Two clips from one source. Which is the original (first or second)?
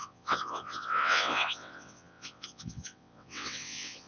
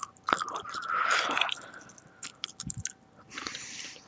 second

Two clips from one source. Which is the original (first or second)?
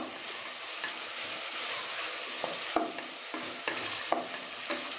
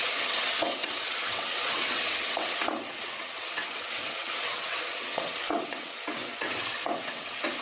first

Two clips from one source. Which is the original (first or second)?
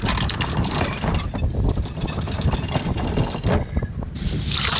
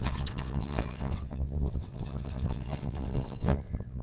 first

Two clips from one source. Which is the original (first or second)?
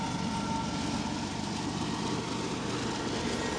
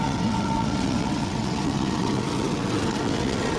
first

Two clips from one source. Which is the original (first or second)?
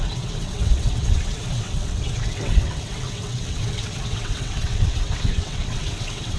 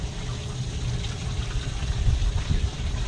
second